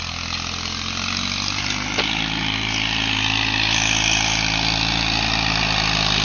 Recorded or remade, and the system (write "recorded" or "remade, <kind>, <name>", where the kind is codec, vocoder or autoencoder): recorded